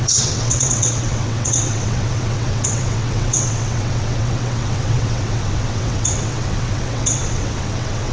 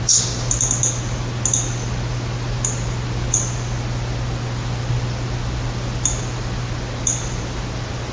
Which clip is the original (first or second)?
second